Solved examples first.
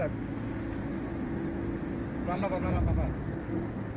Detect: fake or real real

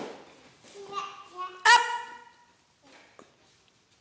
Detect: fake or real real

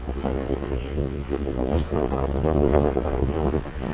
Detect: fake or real fake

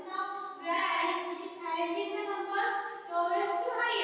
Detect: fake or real real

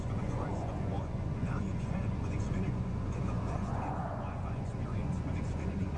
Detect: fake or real fake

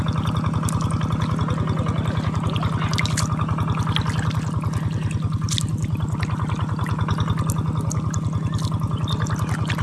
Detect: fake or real real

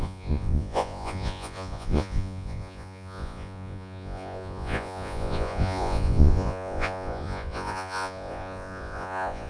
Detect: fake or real fake